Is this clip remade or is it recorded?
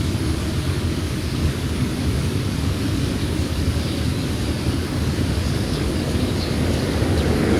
remade